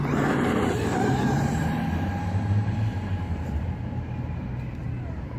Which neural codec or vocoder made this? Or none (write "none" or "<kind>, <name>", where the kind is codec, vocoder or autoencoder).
vocoder, BigVGAN v2